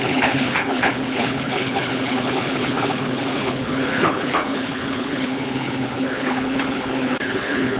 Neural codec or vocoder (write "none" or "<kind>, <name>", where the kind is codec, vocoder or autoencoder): codec, HILCodec